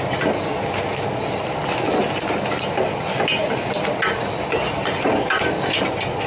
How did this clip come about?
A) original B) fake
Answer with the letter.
A